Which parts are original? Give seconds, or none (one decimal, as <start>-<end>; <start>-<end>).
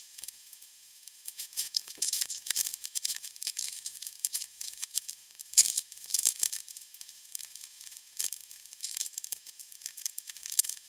none